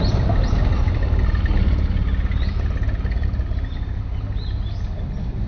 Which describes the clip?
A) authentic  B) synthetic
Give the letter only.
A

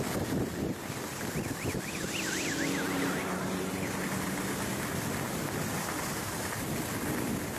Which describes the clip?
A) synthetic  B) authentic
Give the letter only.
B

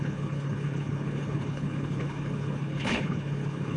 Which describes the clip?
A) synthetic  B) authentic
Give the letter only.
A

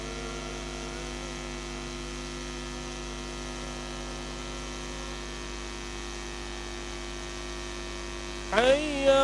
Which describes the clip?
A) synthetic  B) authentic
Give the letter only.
B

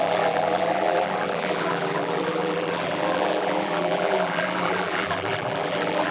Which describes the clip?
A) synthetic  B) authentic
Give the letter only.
A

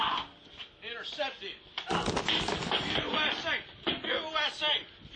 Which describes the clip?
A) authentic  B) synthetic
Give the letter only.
A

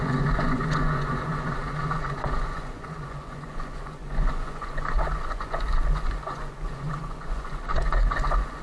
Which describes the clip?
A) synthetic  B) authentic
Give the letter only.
A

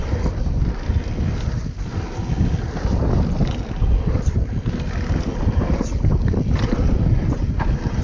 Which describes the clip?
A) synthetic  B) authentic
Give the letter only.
A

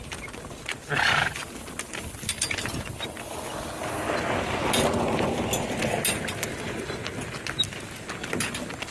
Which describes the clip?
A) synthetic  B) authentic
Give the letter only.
B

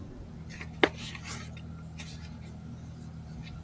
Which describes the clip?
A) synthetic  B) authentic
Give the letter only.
B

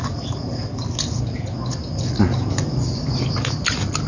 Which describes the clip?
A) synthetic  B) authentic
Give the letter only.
B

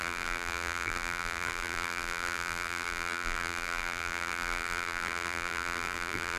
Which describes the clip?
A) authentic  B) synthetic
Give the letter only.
B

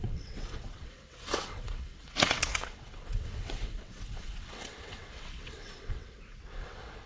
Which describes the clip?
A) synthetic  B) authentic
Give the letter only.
A